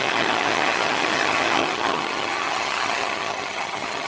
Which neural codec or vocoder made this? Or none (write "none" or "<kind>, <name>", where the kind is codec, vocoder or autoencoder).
vocoder, HiFi-GAN